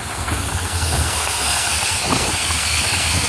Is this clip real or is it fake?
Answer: fake